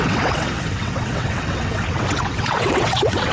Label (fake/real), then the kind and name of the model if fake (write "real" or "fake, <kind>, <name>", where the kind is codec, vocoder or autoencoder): fake, vocoder, WaveNeXt